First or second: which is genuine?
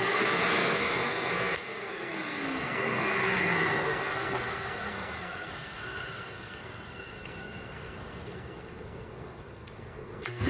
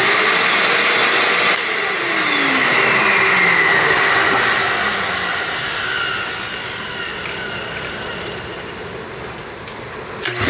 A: second